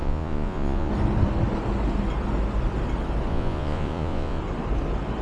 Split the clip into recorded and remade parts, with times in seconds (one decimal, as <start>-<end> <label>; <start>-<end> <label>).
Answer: 0.0-0.9 remade; 0.9-3.3 recorded; 3.3-4.4 remade; 4.4-5.2 recorded